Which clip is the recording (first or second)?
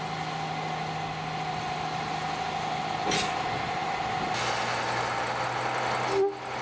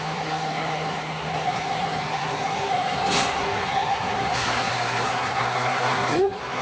first